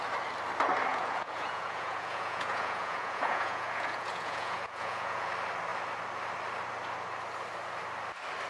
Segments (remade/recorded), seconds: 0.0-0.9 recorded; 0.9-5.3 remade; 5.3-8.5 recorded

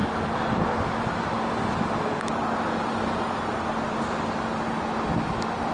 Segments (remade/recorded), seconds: 0.0-5.7 recorded

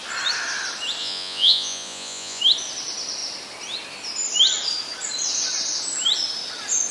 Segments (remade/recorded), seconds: 0.0-1.0 recorded; 1.0-2.4 remade; 2.4-6.9 recorded

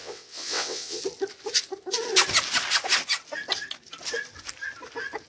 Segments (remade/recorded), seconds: 0.0-1.0 remade; 1.0-5.3 recorded

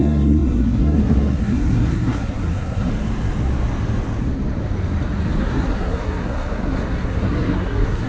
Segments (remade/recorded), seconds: 0.0-2.9 remade; 2.9-5.4 recorded; 5.4-8.1 remade